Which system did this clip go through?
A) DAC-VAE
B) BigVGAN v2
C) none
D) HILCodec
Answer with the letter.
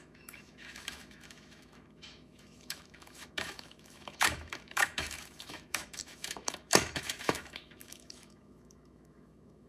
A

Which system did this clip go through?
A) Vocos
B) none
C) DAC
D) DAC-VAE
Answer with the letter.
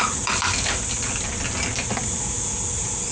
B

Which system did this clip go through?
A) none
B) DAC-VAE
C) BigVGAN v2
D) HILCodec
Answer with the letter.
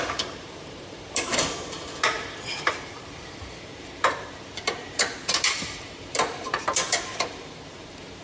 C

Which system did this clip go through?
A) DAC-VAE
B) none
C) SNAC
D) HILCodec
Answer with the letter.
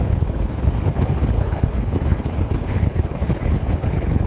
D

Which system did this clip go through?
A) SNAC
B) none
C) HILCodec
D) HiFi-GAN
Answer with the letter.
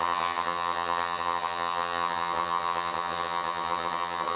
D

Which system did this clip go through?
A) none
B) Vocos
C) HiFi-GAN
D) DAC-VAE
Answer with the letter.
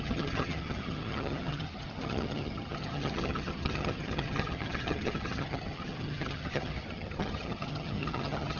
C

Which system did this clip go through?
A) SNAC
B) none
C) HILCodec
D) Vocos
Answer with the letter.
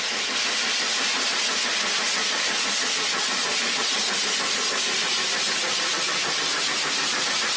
B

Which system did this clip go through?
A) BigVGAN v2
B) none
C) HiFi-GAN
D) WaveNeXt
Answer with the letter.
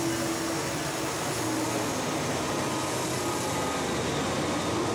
B